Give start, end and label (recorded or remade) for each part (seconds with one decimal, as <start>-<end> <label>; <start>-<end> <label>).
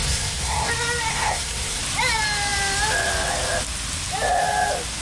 0.0-0.7 remade; 0.7-1.1 recorded; 1.1-1.8 remade; 1.8-5.0 recorded